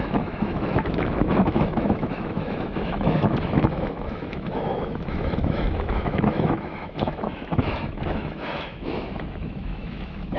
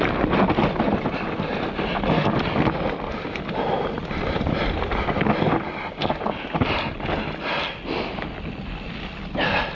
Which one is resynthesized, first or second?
first